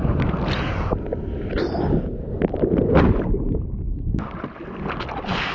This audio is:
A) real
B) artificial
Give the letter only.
A